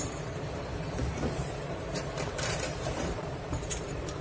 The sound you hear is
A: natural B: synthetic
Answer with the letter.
B